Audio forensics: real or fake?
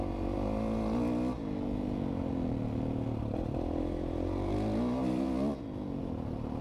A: real